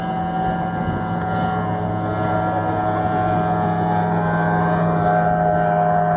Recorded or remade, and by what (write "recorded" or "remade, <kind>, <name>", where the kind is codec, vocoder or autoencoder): recorded